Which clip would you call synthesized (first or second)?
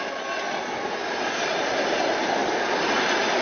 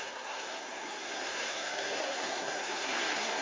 second